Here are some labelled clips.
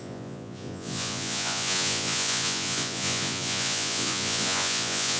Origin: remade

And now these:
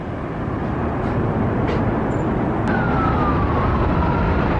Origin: recorded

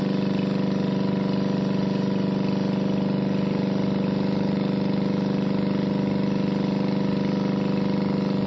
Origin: recorded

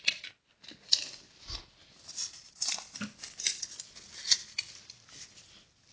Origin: recorded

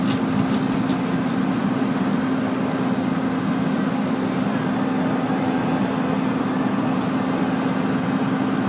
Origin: recorded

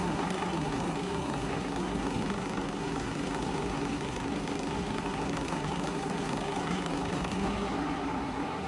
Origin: remade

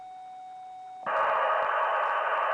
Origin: recorded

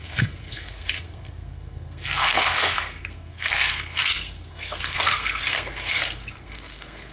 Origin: remade